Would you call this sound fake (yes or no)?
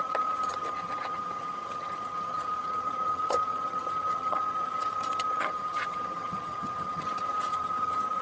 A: yes